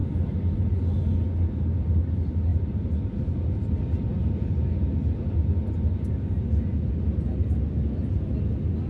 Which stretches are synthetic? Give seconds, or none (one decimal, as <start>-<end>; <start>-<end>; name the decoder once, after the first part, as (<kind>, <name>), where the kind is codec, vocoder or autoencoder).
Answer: 0.0-1.4 (vocoder, BigVGAN v2)